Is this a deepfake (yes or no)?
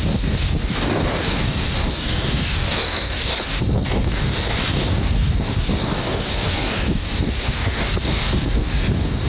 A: yes